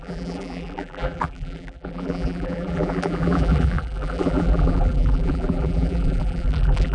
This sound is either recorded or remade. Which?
remade